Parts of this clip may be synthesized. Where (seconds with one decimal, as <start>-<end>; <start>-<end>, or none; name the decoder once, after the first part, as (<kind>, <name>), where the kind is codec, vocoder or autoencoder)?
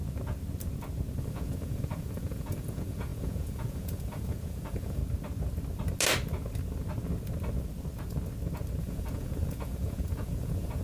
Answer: 1.2-5.0 (vocoder, Vocos); 8.8-10.8